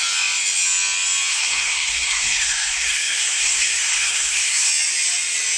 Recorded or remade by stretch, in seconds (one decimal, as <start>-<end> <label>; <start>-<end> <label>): 0.0-1.3 recorded; 1.3-4.7 remade; 4.7-5.6 recorded